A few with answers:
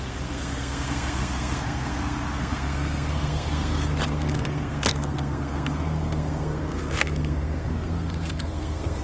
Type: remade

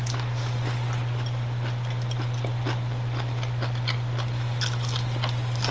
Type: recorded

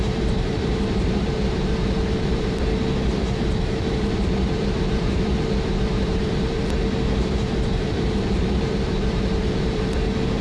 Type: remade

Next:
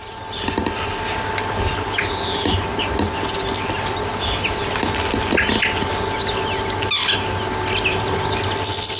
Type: recorded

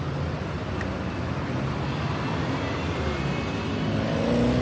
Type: recorded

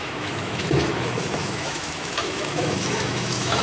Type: remade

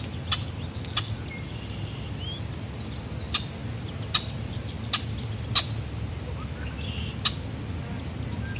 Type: recorded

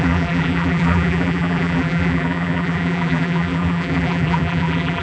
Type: remade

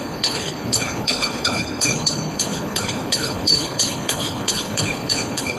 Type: remade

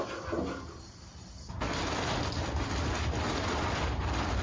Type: recorded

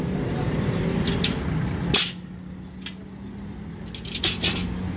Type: recorded